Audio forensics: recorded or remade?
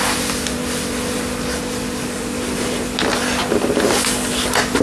recorded